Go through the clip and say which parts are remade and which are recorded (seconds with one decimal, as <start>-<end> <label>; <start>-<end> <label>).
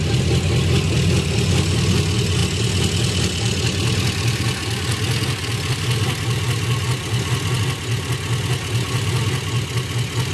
0.0-10.3 recorded